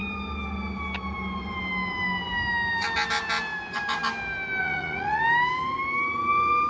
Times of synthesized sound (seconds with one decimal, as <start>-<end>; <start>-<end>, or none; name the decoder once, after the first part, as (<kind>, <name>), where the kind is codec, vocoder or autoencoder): 4.6-5.2 (vocoder, Vocos)